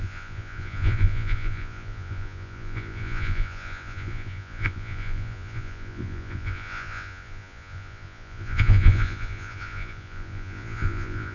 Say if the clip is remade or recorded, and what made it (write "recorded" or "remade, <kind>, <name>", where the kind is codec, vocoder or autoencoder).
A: remade, vocoder, Vocos